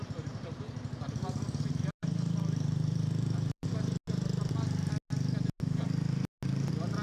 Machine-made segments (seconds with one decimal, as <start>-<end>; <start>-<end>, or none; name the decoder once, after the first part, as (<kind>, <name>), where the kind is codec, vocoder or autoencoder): 2.0-3.7 (vocoder, BigVGAN v2)